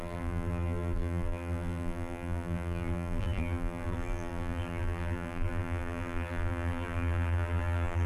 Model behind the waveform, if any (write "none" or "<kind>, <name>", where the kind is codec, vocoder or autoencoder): vocoder, BigVGAN v2